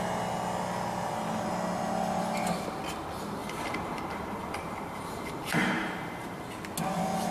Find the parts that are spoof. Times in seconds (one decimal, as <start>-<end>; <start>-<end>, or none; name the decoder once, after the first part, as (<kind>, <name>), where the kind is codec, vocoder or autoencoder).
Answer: 3.4-6.5 (vocoder, BigVGAN v2)